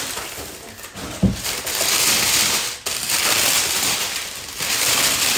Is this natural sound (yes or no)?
yes